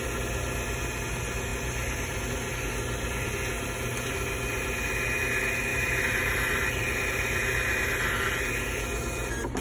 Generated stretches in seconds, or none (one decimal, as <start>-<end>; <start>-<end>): 1.5-2.2; 5.7-8.1